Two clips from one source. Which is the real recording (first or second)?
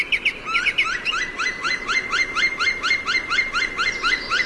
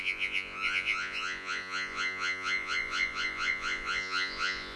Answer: first